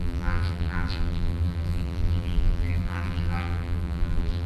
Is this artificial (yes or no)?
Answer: yes